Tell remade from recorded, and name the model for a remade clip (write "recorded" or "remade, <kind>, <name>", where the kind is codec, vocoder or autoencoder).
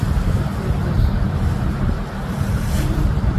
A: remade, vocoder, BigVGAN v2